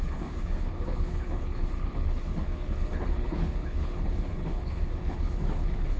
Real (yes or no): no